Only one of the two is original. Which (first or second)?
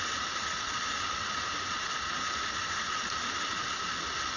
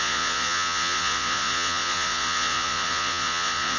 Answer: first